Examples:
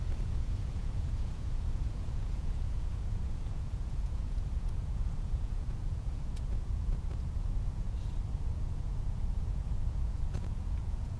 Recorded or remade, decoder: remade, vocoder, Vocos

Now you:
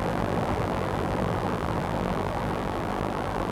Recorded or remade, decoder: remade, vocoder, BigVGAN v2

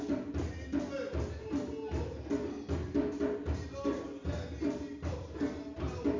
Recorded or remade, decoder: recorded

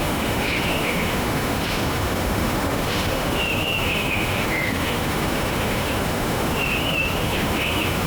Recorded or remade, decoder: remade, autoencoder, DAC-VAE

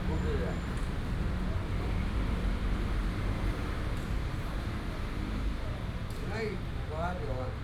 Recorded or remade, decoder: recorded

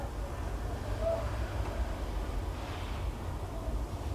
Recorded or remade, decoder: recorded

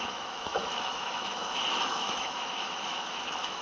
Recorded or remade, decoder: remade, autoencoder, DAC-VAE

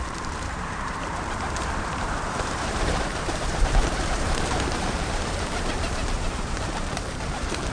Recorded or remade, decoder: remade, vocoder, BigVGAN v2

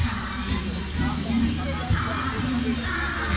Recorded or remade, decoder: recorded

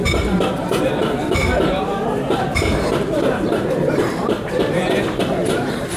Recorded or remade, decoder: remade, vocoder, BigVGAN v2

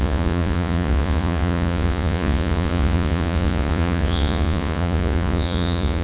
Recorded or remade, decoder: remade, vocoder, Vocos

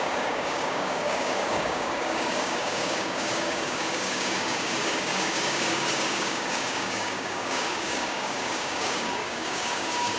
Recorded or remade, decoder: remade, codec, DAC